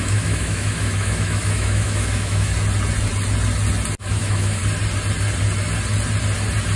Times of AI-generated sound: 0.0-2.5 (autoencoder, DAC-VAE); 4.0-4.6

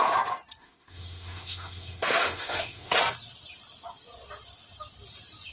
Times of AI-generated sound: 0.6-3.0 (autoencoder, DAC-VAE)

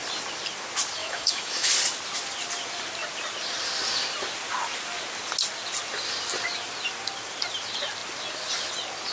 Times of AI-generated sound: 1.0-1.7 (autoencoder, DAC-VAE)